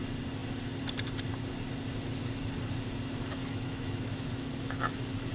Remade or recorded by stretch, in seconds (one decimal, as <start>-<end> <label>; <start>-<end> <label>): 0.0-3.4 recorded; 3.4-5.3 remade